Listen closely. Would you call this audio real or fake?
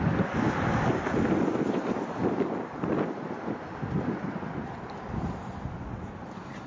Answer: real